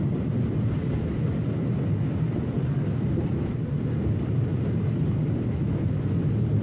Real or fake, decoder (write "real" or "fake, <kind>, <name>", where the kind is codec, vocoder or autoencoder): real